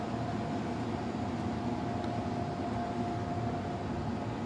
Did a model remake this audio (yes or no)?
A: no